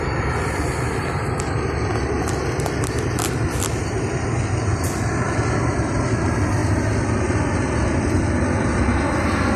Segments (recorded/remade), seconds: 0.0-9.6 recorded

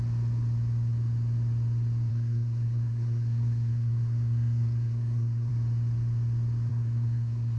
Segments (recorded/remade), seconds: 0.0-2.1 recorded; 2.1-5.5 remade; 5.5-6.7 recorded; 6.7-7.6 remade

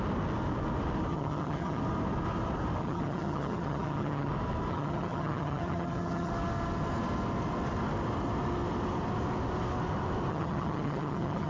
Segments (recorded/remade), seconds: 0.0-1.1 recorded; 1.1-1.8 remade; 1.8-2.8 recorded; 2.8-4.3 remade; 4.3-4.7 recorded; 4.7-6.3 remade; 6.3-10.3 recorded; 10.3-11.5 remade

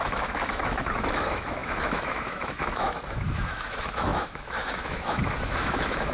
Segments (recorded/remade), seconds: 0.0-6.1 remade

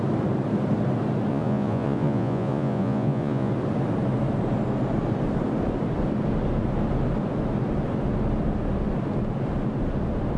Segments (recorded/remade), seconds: 0.0-1.3 recorded; 1.3-3.5 remade; 3.5-10.4 recorded

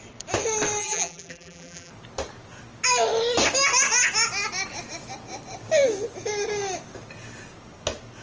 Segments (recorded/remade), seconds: 0.0-0.8 recorded; 0.8-1.9 remade; 1.9-8.2 recorded